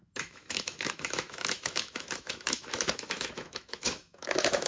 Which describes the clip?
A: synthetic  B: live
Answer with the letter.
A